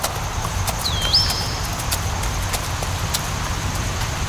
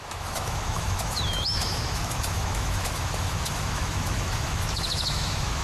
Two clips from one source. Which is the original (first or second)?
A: first